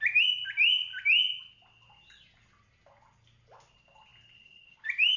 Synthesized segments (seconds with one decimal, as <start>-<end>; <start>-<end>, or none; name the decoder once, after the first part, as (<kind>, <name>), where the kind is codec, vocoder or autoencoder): 4.1-5.2 (vocoder, BigVGAN v2)